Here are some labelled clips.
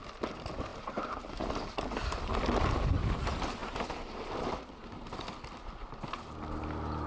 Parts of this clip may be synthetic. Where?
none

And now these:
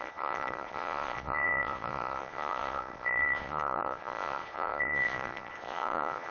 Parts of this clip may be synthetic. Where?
0.0-6.3 (vocoder, Vocos)

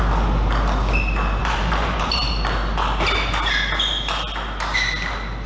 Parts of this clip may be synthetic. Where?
1.4-2.3 (vocoder, BigVGAN v2)

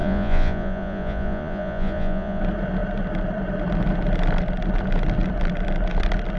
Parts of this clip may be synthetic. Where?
0.0-2.4 (vocoder, Vocos)

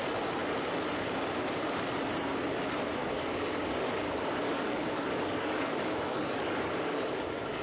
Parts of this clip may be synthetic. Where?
3.0-7.6 (codec, DAC)